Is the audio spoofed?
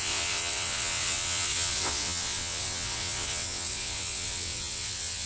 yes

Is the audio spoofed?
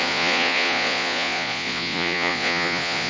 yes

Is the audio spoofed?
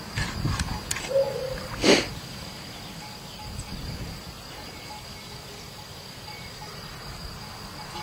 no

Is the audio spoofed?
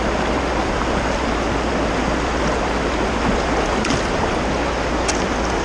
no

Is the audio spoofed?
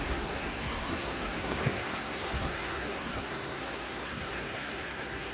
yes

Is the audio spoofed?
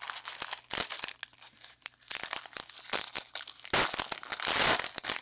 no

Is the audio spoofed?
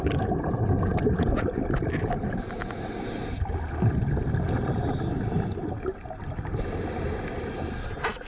no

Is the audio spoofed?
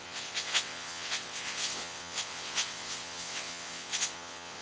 yes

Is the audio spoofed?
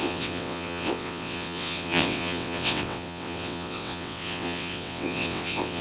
yes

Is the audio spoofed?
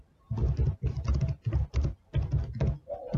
no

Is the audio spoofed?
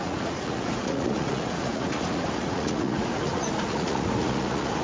yes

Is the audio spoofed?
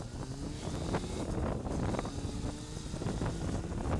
no